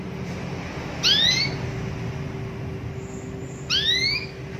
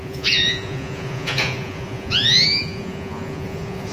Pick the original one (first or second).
first